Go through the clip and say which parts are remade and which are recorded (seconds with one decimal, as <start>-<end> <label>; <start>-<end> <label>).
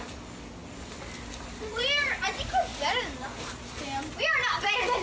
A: 0.0-5.0 recorded